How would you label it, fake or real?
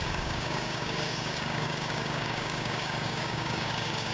fake